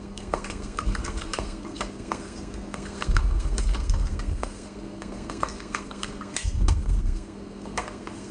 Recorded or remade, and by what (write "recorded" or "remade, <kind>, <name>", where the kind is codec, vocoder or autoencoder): remade, codec, SNAC